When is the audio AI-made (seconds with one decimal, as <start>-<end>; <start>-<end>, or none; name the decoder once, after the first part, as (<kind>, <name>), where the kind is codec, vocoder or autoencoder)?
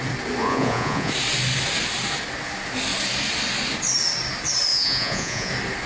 0.4-1.1 (vocoder, Vocos); 4.7-5.5